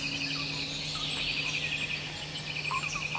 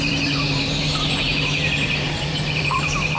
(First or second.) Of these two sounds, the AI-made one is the second